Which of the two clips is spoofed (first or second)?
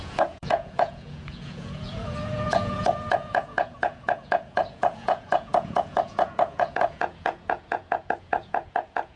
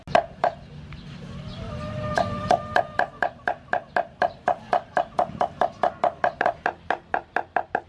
first